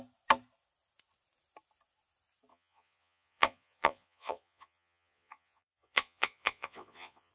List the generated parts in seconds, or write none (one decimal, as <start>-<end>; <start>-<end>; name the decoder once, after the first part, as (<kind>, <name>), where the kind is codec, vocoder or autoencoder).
2.5-7.3 (vocoder, Vocos)